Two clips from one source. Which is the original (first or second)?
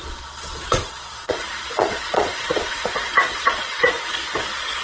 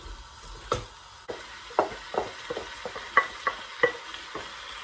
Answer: second